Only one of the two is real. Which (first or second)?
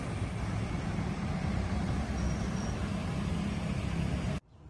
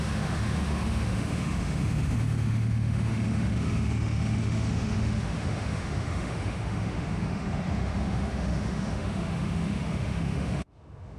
first